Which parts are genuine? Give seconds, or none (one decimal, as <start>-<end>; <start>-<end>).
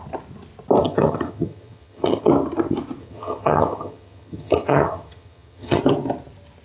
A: 0.0-0.8; 2.3-3.0; 5.8-6.6